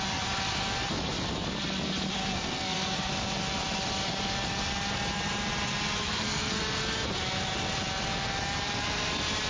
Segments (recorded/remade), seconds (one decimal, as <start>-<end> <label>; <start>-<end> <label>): 0.0-2.2 recorded; 2.2-3.1 remade; 3.1-6.0 recorded; 6.0-6.6 remade; 6.6-9.5 recorded